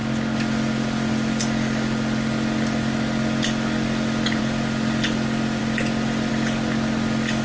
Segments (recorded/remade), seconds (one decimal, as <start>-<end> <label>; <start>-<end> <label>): 0.0-7.4 recorded